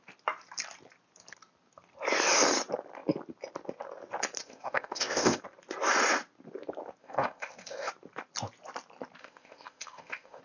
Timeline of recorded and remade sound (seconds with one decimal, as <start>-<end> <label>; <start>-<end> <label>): 0.0-4.4 recorded; 4.4-5.4 remade; 5.4-7.0 recorded; 7.0-7.9 remade; 7.9-9.2 recorded; 9.2-10.4 remade